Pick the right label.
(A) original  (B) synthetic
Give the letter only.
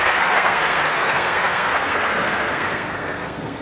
B